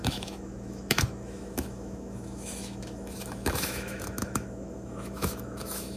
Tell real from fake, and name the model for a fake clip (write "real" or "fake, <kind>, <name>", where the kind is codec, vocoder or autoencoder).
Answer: fake, autoencoder, DAC-VAE